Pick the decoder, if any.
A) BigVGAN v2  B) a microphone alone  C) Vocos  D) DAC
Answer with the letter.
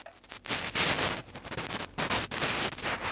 A